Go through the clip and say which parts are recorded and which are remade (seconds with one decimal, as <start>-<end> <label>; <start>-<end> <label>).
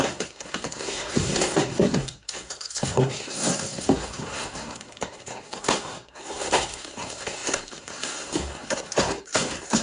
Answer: 0.0-9.8 remade